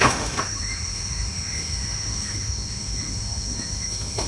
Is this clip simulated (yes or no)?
yes